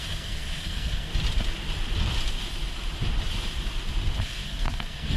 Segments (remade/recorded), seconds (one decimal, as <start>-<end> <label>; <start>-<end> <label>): 0.0-1.1 remade; 1.1-4.2 recorded; 4.2-5.2 remade